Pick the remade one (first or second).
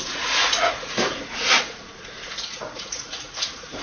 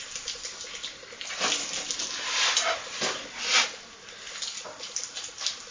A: first